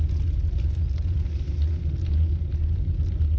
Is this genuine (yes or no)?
yes